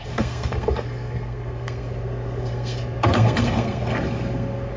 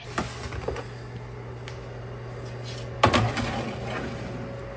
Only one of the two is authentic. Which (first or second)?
second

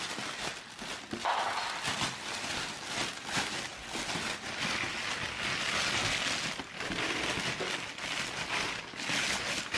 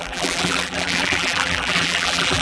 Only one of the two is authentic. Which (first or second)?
first